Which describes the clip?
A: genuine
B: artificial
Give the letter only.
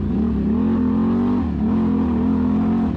A